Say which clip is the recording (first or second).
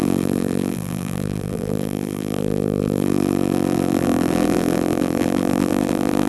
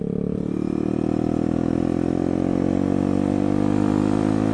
second